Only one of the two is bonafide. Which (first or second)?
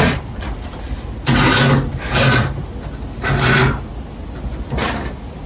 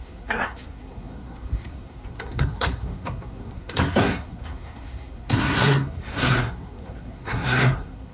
first